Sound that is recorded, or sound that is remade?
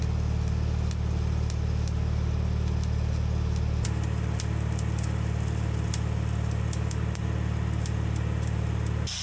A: recorded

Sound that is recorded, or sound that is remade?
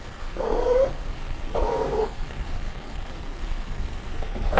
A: remade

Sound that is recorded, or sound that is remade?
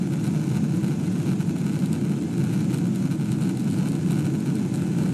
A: recorded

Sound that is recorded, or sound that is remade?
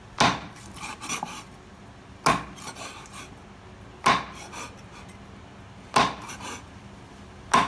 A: recorded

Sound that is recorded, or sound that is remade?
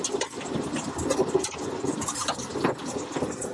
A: recorded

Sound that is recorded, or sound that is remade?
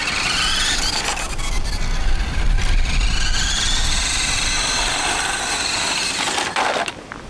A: recorded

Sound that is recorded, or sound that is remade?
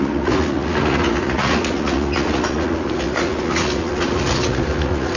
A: remade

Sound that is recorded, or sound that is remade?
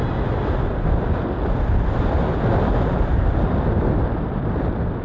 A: recorded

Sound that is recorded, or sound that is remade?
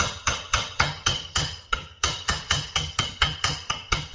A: remade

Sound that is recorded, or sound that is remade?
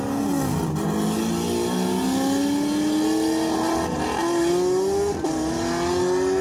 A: recorded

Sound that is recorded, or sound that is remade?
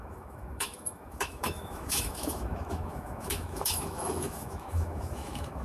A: remade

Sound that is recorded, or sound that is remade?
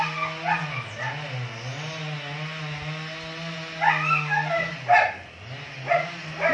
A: recorded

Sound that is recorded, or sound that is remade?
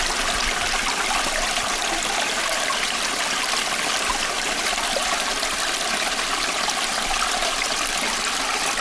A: recorded